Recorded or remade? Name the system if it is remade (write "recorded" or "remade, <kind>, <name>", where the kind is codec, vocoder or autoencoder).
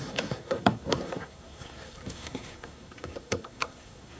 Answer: remade, codec, SNAC